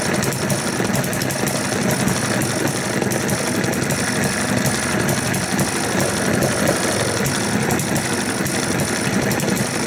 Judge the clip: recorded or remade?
recorded